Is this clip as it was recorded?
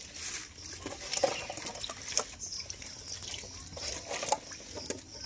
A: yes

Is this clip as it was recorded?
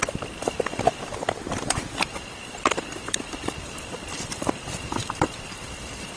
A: no